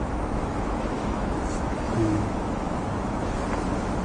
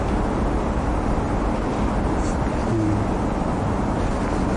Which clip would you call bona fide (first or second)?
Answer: second